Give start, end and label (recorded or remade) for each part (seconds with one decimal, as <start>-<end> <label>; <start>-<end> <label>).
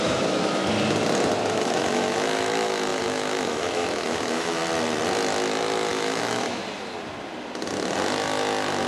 0.0-0.6 remade; 0.6-1.5 recorded; 1.5-4.6 remade; 4.6-5.9 recorded; 5.9-6.6 remade; 6.6-8.9 recorded